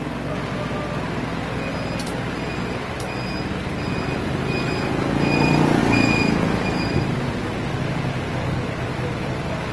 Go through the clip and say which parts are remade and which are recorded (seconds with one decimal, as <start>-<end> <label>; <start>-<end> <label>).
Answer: 0.0-9.7 recorded